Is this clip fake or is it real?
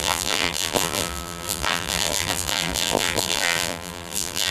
fake